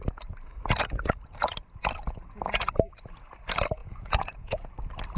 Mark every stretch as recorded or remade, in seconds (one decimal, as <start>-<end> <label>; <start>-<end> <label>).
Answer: 0.0-3.8 recorded; 3.8-4.7 remade; 4.7-5.2 recorded